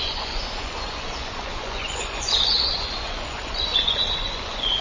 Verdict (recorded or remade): remade